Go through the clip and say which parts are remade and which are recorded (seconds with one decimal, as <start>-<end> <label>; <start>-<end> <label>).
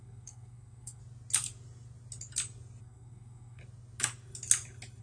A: 0.0-1.0 remade; 1.0-2.8 recorded; 2.8-3.6 remade; 3.6-5.0 recorded